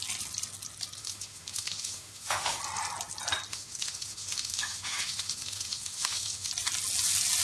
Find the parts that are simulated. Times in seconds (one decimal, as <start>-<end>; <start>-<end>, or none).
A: 1.0-2.6; 3.5-6.5